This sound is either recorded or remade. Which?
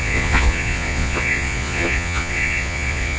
remade